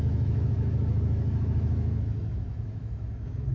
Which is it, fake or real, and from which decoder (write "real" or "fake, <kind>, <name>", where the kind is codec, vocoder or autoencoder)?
fake, autoencoder, DAC-VAE